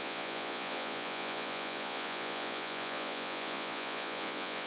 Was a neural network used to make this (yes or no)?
yes